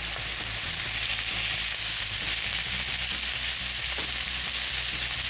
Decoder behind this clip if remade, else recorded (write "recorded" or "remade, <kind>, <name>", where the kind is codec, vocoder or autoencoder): recorded